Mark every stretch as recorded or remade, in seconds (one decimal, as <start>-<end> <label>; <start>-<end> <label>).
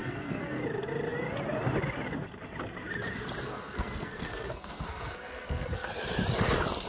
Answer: 0.0-0.6 remade; 0.6-3.4 recorded; 3.4-5.9 remade; 5.9-6.9 recorded